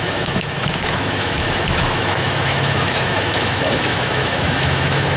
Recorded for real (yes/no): no